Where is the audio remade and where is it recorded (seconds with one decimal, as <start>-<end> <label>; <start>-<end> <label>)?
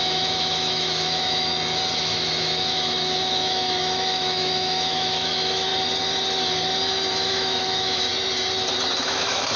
0.0-1.5 remade; 1.5-2.0 recorded; 2.0-5.7 remade; 5.7-7.1 recorded; 7.1-8.1 remade; 8.1-9.0 recorded; 9.0-9.6 remade